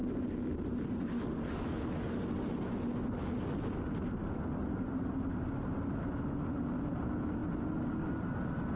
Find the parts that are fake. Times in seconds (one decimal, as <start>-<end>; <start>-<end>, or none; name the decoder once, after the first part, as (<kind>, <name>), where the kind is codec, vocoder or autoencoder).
none

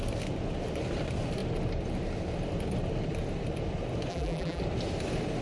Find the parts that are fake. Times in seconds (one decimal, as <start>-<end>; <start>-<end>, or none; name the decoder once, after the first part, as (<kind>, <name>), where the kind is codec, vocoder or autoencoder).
4.1-4.6 (vocoder, BigVGAN v2)

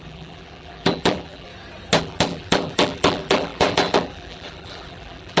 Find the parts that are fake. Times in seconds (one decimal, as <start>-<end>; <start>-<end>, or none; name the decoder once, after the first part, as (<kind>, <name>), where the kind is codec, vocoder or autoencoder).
0.0-1.5 (vocoder, BigVGAN v2); 2.0-5.4

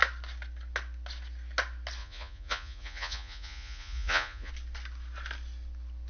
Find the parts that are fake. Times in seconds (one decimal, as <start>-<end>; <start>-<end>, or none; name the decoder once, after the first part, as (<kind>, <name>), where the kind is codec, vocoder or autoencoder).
2.0-4.5 (vocoder, Vocos)

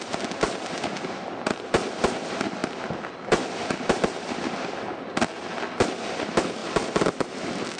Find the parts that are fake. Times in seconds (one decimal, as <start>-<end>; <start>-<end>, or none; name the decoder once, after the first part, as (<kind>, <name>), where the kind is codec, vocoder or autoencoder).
none